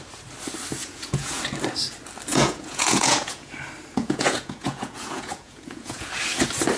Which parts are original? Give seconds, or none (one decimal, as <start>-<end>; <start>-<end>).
0.0-0.8; 1.4-2.3; 3.5-3.9; 6.1-6.8

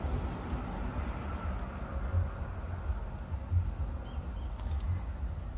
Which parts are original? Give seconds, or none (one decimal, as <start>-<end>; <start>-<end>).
0.0-5.6

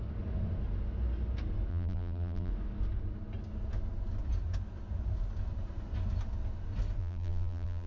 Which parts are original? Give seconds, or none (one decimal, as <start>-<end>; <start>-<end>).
0.0-1.7; 2.5-7.0

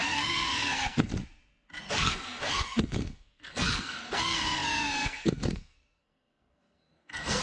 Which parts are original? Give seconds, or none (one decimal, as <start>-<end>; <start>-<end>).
1.1-1.9

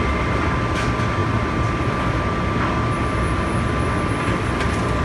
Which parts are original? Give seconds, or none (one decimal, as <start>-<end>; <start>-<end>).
0.0-5.0

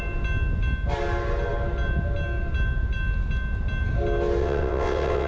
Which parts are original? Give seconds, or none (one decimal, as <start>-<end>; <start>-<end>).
0.0-4.4

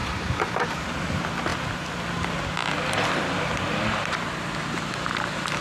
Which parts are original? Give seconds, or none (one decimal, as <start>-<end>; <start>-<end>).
0.8-5.6